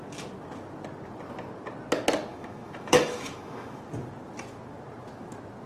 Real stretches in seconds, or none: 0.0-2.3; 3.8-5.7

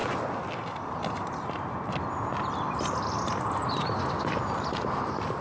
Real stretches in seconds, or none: 0.0-5.4

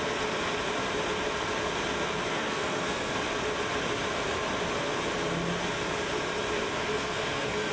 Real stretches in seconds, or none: 0.0-2.3; 3.1-6.8

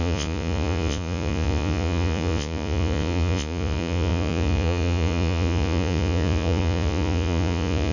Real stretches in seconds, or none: none

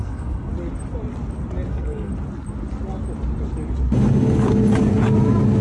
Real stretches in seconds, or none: 0.5-1.7; 2.1-5.6

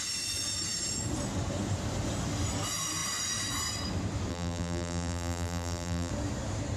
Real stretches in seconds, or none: 0.0-4.3; 6.1-6.8

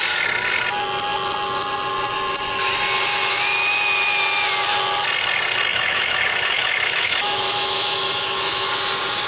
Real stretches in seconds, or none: 0.0-5.7; 8.7-9.3

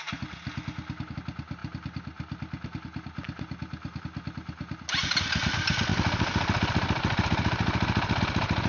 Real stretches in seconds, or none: 0.0-8.7